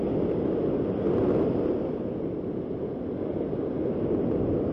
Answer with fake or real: real